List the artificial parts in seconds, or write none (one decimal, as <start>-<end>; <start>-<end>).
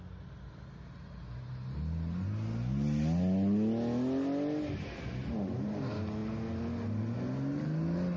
none